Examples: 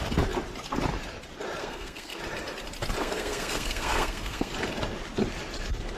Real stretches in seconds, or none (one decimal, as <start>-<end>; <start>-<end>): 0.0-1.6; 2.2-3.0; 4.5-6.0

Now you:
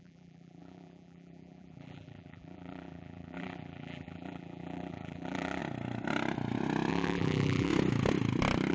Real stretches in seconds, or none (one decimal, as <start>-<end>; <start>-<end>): 5.6-6.9; 7.7-8.7

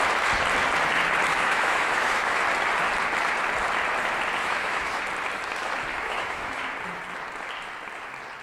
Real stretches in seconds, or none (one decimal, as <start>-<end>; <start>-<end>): 0.0-1.3; 2.4-4.4; 5.0-5.9; 6.6-8.4

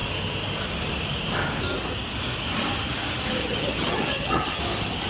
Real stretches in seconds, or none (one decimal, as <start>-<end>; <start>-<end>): 0.0-3.4; 4.6-5.1